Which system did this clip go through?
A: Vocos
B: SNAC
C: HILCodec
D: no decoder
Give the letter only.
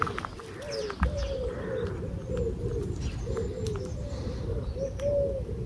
D